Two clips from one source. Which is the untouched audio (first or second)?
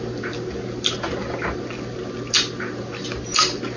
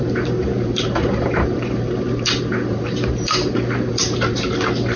first